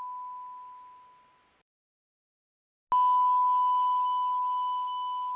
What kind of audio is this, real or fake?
real